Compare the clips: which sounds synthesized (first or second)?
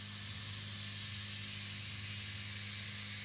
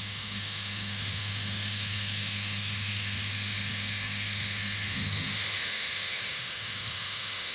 second